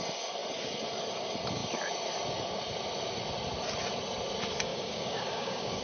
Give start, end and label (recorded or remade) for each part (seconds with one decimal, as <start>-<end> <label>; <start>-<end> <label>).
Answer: 0.0-4.7 recorded; 4.7-5.8 remade